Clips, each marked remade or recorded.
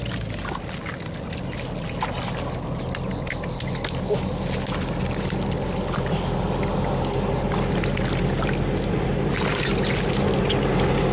recorded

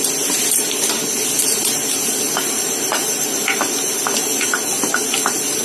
recorded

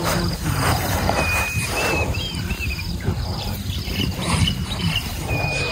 remade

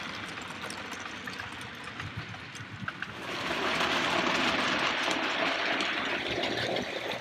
recorded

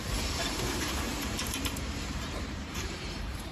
remade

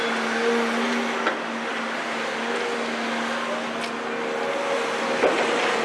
recorded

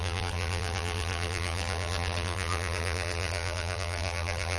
remade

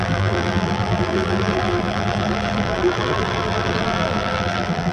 remade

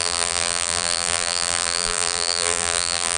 remade